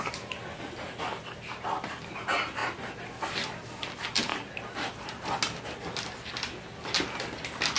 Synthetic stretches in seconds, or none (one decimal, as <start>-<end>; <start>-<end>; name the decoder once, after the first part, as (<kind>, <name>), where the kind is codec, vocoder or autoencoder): none